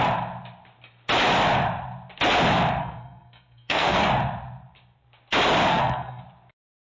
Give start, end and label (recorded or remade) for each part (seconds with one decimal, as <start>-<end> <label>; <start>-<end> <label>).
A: 0.0-2.8 recorded; 2.8-4.1 remade; 4.1-5.7 recorded; 5.7-6.2 remade; 6.2-6.9 recorded

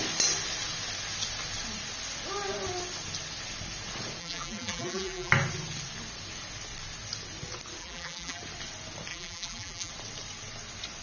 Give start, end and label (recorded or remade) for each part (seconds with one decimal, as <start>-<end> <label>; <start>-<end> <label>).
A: 0.0-4.2 recorded; 4.2-5.3 remade; 5.3-7.8 recorded; 7.8-8.4 remade; 8.4-9.1 recorded; 9.1-9.9 remade; 9.9-11.0 recorded

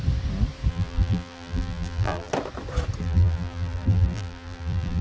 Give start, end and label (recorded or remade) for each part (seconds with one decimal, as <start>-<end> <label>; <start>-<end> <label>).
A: 0.0-0.7 recorded; 0.7-2.3 remade; 2.3-3.0 recorded; 3.0-5.0 remade

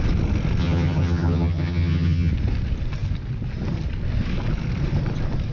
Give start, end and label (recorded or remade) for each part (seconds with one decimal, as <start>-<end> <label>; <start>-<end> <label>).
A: 0.0-0.6 recorded; 0.6-2.3 remade; 2.3-5.5 recorded

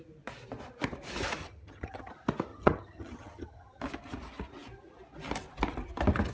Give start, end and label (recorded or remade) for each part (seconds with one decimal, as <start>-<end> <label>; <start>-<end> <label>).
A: 0.0-1.4 recorded; 1.4-2.1 remade; 2.1-2.5 recorded; 2.5-3.8 remade; 3.8-6.3 recorded

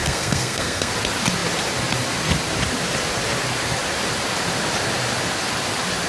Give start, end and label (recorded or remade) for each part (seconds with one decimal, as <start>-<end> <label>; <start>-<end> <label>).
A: 0.0-0.9 remade; 0.9-6.1 recorded